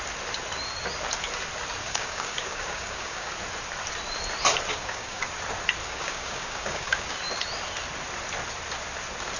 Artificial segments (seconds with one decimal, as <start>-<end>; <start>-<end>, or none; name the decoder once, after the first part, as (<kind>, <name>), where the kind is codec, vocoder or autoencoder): 1.8-3.3 (codec, DAC); 4.7-5.3; 5.8-7.2